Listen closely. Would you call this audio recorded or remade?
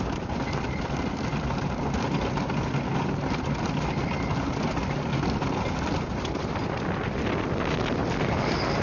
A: recorded